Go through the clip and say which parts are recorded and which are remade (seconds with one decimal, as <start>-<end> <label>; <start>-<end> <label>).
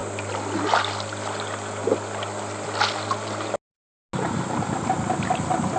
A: 0.0-5.8 recorded